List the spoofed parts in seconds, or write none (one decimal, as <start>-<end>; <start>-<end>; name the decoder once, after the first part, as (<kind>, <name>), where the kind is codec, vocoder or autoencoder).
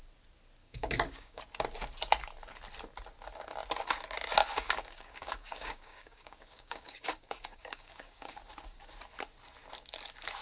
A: 0.6-1.4 (codec, DAC); 4.4-8.4